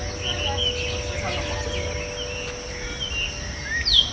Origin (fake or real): real